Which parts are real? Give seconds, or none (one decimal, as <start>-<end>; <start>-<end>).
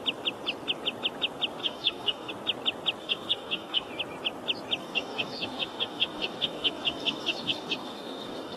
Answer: 0.0-1.6; 2.3-3.0; 3.9-4.8